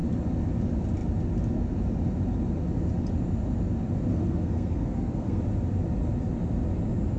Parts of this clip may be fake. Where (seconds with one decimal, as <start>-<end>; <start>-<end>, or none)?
4.1-5.4